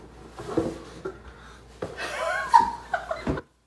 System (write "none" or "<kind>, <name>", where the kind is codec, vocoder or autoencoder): none